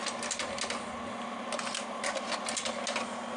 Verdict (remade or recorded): recorded